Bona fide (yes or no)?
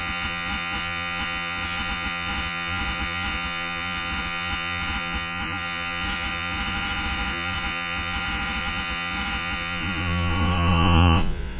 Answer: no